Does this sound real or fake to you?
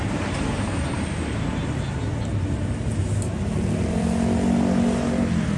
real